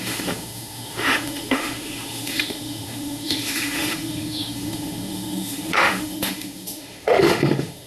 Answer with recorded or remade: remade